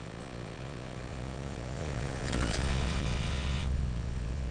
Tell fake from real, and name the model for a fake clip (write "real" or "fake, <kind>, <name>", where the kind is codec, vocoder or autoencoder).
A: fake, vocoder, Vocos